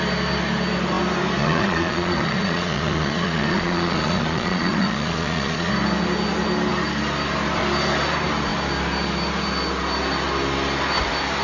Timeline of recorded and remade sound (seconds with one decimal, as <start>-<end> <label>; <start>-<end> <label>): 0.0-1.4 recorded; 1.4-5.7 remade; 5.7-11.4 recorded